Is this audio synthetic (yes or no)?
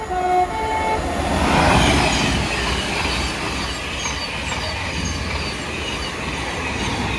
no